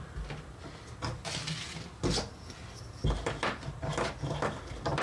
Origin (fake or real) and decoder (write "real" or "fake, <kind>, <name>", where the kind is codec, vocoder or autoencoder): real